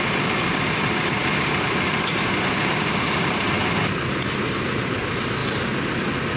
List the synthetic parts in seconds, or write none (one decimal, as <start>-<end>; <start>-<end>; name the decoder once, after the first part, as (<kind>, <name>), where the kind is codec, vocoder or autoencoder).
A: 0.0-5.4 (vocoder, BigVGAN v2)